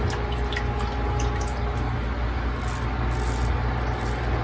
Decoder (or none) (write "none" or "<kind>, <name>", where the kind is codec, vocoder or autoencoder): none